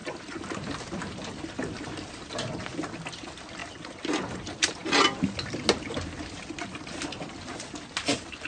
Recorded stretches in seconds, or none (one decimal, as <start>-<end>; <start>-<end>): 1.8-8.5

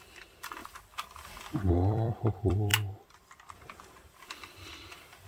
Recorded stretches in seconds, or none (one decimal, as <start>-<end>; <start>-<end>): 2.7-3.5

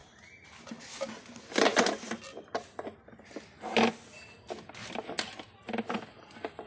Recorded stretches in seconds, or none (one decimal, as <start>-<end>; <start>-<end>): 0.0-6.7

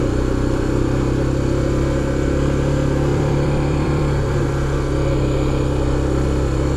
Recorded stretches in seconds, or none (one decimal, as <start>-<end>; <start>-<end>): 0.0-3.1; 4.2-6.8

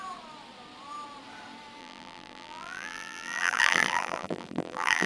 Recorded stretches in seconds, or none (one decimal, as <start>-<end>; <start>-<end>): 0.0-1.8

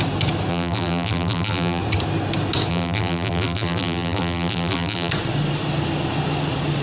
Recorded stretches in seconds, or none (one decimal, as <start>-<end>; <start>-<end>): 0.0-0.5; 1.8-2.7; 5.1-6.8